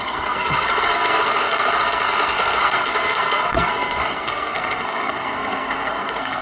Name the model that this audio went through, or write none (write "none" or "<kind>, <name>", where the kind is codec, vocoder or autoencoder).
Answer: codec, SNAC